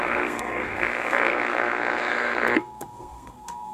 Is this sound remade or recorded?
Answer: remade